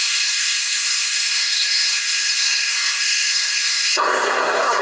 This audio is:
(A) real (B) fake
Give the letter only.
B